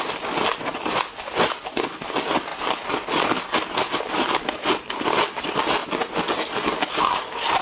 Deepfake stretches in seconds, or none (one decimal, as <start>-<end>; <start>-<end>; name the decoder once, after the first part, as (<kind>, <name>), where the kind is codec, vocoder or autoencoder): none